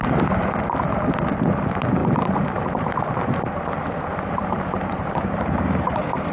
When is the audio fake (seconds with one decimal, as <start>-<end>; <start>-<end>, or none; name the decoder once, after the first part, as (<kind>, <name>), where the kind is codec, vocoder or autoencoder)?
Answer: 3.8-6.3 (vocoder, BigVGAN v2)